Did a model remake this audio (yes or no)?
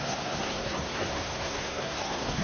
yes